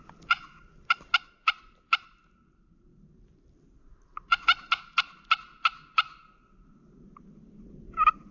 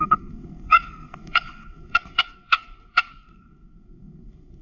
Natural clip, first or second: first